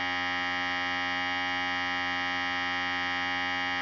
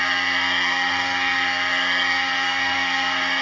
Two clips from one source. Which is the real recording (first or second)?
first